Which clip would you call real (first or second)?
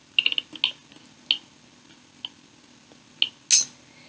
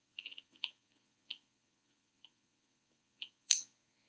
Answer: first